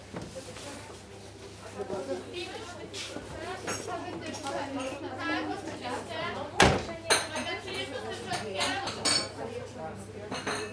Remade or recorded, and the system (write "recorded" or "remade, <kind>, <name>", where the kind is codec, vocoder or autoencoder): recorded